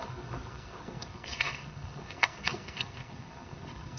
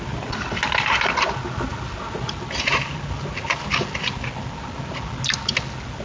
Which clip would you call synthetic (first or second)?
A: first